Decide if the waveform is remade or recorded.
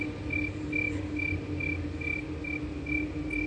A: recorded